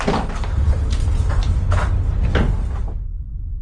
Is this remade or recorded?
recorded